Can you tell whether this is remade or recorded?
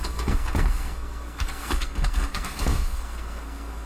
remade